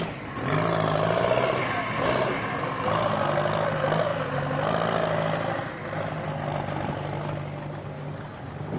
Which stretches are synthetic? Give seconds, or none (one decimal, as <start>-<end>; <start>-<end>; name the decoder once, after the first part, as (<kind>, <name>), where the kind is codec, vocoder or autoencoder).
none